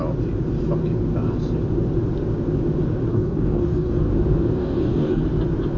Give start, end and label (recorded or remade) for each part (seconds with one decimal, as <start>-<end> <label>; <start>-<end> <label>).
0.0-3.1 recorded; 3.1-4.1 remade; 4.1-4.6 recorded; 4.6-5.2 remade; 5.2-5.8 recorded